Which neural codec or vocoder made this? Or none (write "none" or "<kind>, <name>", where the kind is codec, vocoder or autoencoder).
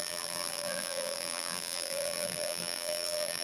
vocoder, BigVGAN v2